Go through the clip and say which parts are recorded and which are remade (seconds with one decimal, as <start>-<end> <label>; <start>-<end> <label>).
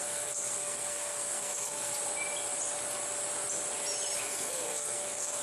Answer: 0.0-1.9 remade; 1.9-4.2 recorded; 4.2-5.4 remade